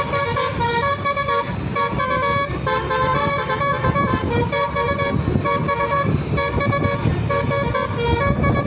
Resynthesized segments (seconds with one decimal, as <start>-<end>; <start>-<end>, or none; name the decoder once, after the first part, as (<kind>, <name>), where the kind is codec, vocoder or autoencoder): 3.1-7.5 (vocoder, BigVGAN v2)